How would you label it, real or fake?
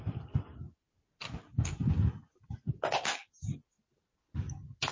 real